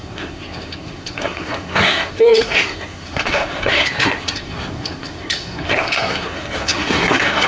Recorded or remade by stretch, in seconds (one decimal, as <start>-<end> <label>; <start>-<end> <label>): 0.0-7.5 remade